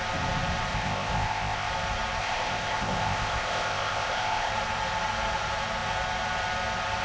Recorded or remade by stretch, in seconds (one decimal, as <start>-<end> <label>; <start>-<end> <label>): 0.0-0.7 recorded; 0.7-1.7 remade; 1.7-2.2 recorded; 2.2-4.5 remade; 4.5-7.0 recorded